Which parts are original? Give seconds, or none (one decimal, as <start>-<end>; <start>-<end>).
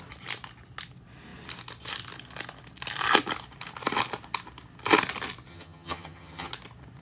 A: 0.0-5.5; 6.5-7.0